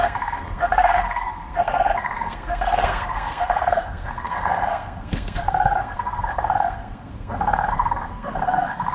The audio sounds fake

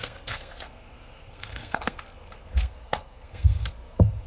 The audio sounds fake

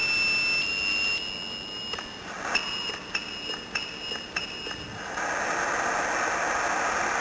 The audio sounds real